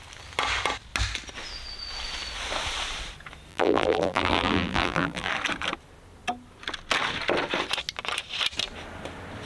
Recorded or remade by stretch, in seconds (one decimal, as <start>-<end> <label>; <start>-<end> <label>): 0.0-3.5 recorded; 3.5-5.3 remade; 5.3-9.4 recorded